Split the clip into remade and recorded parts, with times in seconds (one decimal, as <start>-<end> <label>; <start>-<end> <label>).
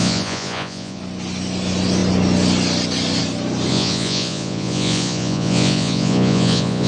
0.0-1.0 remade; 1.0-3.7 recorded; 3.7-6.9 remade